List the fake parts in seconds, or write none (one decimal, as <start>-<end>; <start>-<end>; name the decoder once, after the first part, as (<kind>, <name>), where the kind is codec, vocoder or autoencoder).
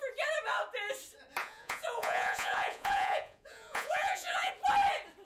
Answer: 1.4-4.5 (vocoder, Vocos)